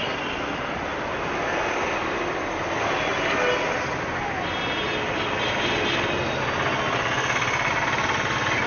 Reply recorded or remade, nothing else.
recorded